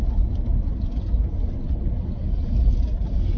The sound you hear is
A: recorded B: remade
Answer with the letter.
A